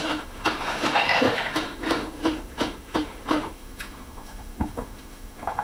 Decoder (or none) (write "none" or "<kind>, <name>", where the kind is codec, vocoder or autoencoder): autoencoder, DAC-VAE